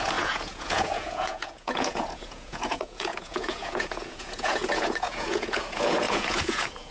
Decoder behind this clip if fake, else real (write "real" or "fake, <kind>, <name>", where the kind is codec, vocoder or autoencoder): fake, vocoder, Vocos